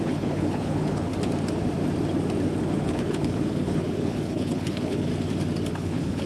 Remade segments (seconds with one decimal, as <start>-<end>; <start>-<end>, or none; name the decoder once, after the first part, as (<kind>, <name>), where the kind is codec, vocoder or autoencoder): 0.0-1.1 (codec, HILCodec); 2.6-5.1; 5.7-6.3